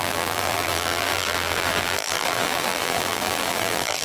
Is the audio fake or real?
fake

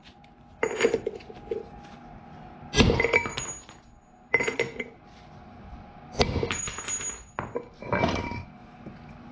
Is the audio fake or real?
real